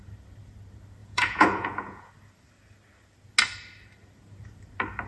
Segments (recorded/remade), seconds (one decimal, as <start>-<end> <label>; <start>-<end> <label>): 0.0-1.0 recorded; 1.0-2.1 remade; 2.1-5.1 recorded